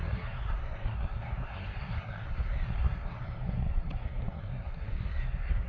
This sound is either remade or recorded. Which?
remade